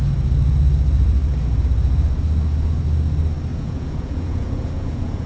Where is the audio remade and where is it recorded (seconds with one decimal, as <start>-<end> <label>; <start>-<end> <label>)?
0.0-3.5 recorded; 3.5-5.3 remade